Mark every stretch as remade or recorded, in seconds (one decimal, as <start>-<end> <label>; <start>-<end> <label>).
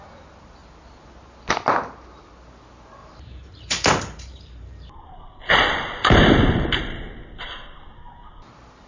0.0-3.0 recorded; 3.0-6.8 remade; 6.8-8.9 recorded